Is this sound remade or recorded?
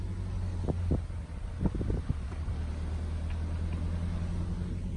recorded